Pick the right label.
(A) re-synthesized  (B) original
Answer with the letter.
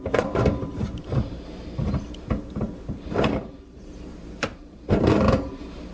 A